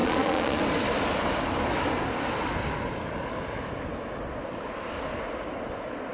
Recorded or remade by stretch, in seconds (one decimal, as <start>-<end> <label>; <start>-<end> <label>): 0.0-0.6 remade; 0.6-6.1 recorded